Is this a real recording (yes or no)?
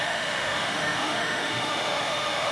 no